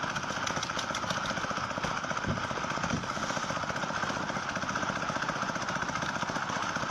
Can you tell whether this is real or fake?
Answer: real